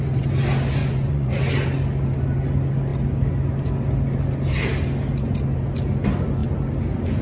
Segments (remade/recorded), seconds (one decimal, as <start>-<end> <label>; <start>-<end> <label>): 0.0-0.8 recorded; 0.8-1.3 remade; 1.3-7.2 recorded

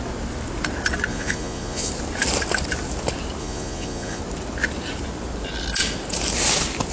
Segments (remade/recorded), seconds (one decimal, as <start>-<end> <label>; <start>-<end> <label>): 0.0-1.1 recorded; 1.1-1.9 remade; 1.9-3.4 recorded; 3.4-4.2 remade; 4.2-6.9 recorded

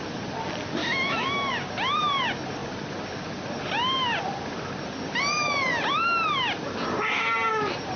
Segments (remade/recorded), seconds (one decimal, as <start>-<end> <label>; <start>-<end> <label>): 0.0-0.8 recorded; 0.8-1.5 remade; 1.5-8.0 recorded

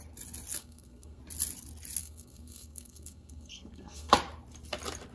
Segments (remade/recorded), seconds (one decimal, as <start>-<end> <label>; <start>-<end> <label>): 0.0-0.6 recorded; 0.6-1.2 remade; 1.2-2.0 recorded; 2.0-4.1 remade; 4.1-5.1 recorded

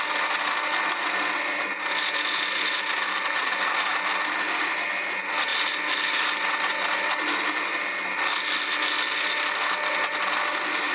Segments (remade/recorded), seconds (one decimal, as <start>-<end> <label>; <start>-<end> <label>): 0.0-10.9 recorded

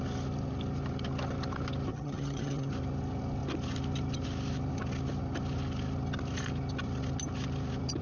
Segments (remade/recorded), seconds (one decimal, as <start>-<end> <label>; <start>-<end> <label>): 0.0-1.9 recorded; 1.9-2.7 remade; 2.7-8.0 recorded

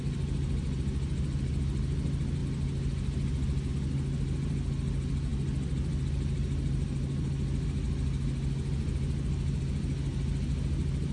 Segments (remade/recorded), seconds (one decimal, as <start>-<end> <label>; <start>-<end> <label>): 0.0-11.1 recorded